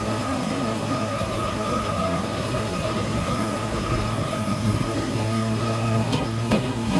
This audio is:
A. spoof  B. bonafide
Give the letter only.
A